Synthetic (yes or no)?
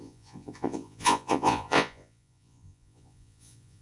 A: yes